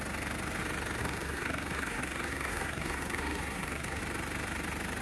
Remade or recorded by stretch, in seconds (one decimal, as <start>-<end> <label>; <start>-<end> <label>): 0.0-1.0 recorded; 1.0-4.0 remade; 4.0-5.0 recorded